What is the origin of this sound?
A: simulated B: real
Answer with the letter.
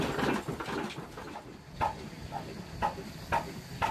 B